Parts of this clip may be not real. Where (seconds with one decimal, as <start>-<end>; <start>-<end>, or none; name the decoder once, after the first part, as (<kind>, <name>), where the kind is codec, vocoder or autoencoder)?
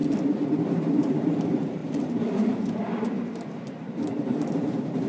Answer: 0.6-5.1 (vocoder, BigVGAN v2)